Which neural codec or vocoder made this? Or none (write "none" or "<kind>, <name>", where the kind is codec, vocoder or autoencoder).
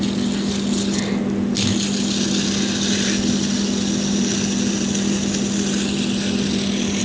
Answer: none